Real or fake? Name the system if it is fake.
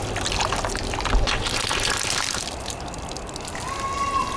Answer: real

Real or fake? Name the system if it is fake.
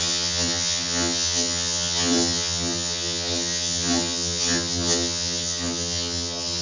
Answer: fake, vocoder, HiFi-GAN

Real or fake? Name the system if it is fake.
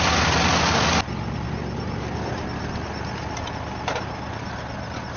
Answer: real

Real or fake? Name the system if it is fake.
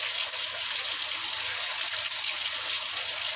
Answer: real